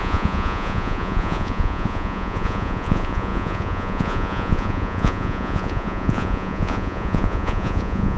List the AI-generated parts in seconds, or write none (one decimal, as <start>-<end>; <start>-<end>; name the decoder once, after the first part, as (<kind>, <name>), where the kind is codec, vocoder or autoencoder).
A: 0.0-8.2 (vocoder, Vocos)